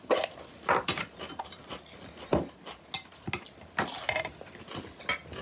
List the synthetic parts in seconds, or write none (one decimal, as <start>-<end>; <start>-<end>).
none